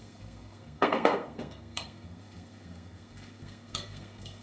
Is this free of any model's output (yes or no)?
no